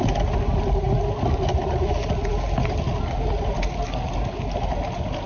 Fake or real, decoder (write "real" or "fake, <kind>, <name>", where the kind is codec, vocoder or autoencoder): real